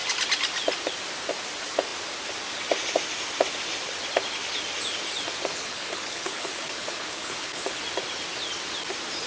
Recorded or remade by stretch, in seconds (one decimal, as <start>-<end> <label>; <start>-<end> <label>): 0.0-5.5 recorded; 5.5-7.8 remade; 7.8-9.3 recorded